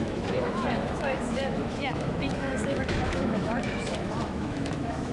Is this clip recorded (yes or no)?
no